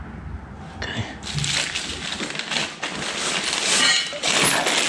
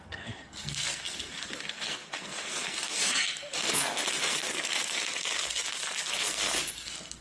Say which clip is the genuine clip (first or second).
first